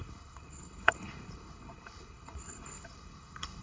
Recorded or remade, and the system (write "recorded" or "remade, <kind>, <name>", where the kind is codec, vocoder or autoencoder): remade, codec, HILCodec